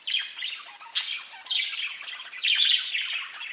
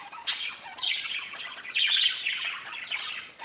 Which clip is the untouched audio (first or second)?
first